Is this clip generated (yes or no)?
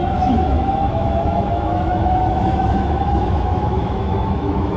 yes